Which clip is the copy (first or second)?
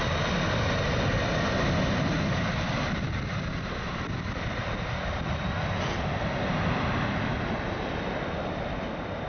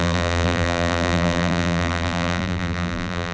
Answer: second